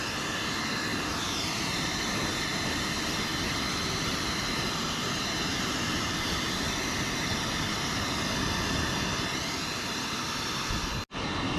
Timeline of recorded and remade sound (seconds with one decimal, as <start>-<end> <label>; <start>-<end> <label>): 0.0-0.9 recorded; 0.9-1.4 remade; 1.4-11.6 recorded